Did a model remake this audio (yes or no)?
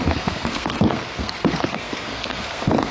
yes